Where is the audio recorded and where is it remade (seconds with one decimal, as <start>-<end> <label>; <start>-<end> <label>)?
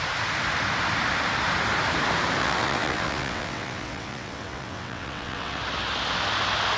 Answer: 0.0-2.4 recorded; 2.4-5.6 remade; 5.6-6.8 recorded